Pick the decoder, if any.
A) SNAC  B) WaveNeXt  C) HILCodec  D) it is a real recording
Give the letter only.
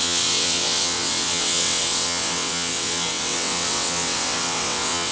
B